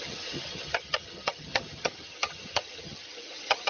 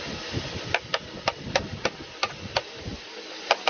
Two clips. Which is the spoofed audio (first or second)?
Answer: first